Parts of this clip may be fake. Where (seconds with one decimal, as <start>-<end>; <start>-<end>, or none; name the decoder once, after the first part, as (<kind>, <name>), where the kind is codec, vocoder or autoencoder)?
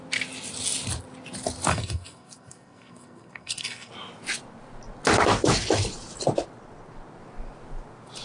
1.7-3.9 (codec, SNAC)